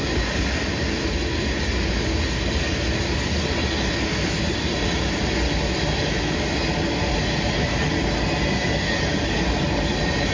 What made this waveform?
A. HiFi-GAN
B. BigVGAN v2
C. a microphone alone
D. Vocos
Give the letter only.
C